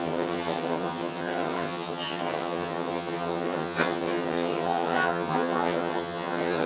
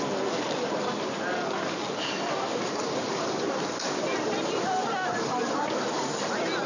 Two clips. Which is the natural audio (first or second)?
second